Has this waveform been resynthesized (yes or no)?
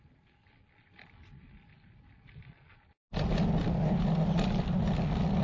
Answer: no